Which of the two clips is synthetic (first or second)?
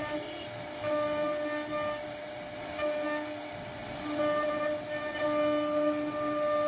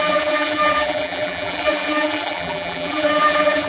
second